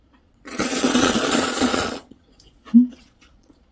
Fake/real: fake